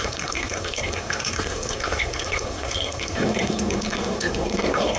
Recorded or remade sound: remade